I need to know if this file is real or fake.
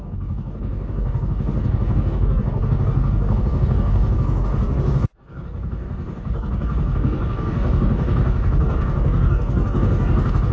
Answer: fake